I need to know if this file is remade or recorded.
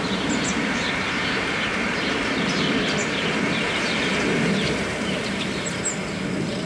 remade